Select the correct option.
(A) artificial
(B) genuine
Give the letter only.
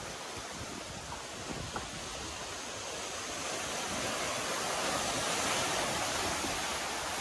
B